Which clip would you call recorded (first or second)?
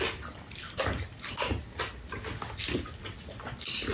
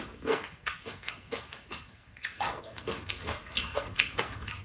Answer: first